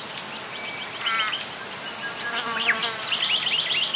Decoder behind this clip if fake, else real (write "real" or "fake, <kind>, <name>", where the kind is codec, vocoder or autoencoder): real